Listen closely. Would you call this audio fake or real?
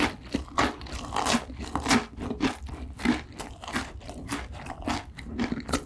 real